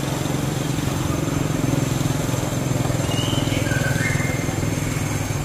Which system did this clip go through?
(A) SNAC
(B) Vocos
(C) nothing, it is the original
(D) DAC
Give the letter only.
C